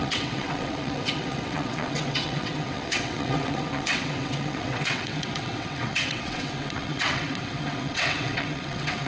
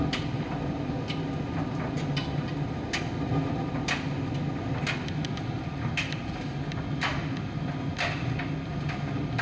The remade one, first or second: first